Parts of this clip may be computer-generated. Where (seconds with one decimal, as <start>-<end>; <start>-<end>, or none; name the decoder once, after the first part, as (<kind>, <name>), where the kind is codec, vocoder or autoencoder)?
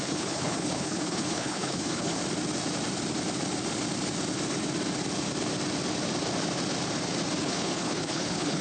0.0-2.2 (codec, HILCodec); 7.4-8.6